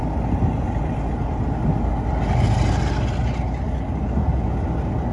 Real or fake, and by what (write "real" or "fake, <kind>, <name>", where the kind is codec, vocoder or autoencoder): real